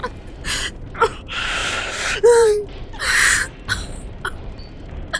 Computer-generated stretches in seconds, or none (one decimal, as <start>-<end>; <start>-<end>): 1.6-4.7